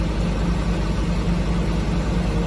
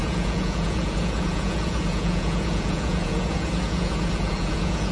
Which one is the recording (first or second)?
first